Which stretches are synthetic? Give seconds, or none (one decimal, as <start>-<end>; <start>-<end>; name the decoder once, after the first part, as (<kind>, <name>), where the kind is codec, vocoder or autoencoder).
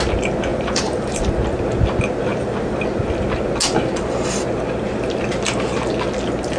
0.5-1.2 (vocoder, BigVGAN v2); 2.3-2.8